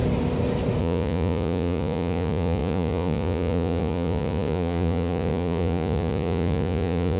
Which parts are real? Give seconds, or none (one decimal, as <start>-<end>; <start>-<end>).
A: 0.0-0.8